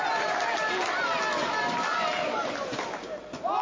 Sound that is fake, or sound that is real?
real